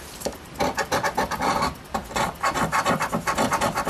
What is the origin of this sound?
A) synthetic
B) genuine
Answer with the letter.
A